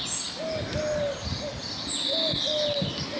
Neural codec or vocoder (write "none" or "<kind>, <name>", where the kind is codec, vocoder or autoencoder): none